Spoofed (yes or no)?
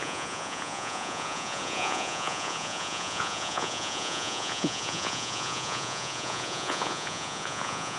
yes